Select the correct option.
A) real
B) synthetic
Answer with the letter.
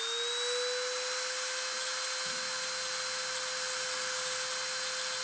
A